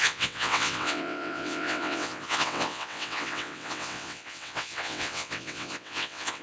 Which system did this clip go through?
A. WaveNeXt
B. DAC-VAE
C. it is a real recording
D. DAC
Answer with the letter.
A